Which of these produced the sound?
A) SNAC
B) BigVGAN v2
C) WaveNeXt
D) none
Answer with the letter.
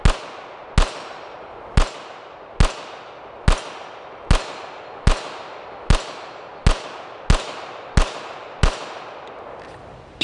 D